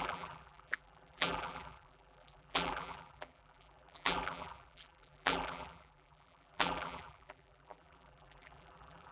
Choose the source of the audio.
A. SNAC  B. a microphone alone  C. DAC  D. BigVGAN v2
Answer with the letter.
D